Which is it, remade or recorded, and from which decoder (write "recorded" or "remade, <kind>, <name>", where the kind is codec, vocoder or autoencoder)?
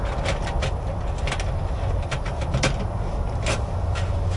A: recorded